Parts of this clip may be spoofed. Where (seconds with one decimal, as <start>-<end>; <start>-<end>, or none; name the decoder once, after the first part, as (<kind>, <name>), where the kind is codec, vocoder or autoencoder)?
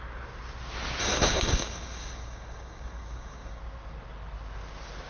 1.0-3.6 (codec, DAC)